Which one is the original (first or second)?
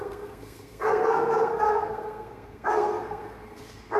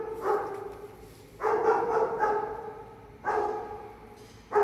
second